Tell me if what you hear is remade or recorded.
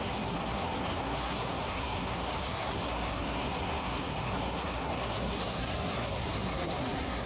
remade